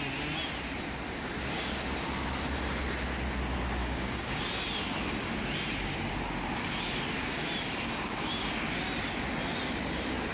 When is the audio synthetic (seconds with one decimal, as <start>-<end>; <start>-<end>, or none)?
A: 3.8-4.4